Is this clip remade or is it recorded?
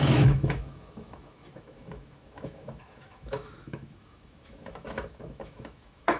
remade